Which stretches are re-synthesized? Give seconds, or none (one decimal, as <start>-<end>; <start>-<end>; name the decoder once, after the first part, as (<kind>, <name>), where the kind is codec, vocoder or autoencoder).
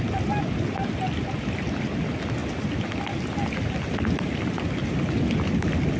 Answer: none